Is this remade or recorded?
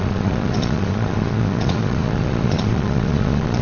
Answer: remade